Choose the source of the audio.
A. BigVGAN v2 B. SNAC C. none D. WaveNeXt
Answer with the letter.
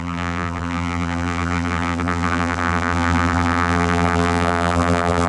A